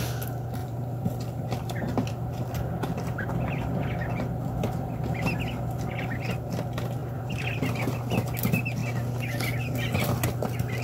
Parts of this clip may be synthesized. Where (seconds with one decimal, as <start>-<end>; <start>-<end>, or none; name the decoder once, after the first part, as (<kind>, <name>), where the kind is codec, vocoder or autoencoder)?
0.6-5.0 (vocoder, BigVGAN v2); 7.0-7.6